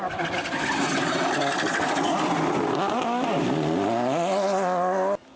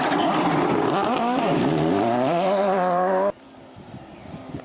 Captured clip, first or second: first